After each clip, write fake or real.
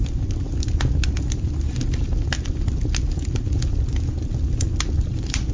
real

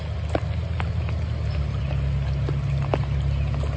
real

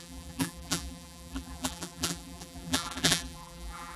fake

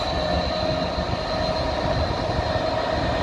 real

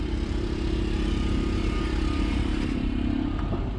fake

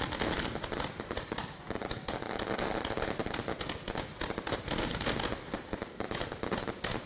real